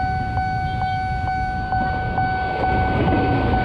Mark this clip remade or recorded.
recorded